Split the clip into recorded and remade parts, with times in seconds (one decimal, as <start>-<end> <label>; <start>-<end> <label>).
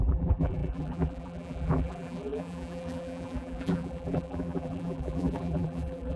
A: 0.0-6.2 remade